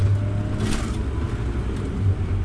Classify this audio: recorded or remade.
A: recorded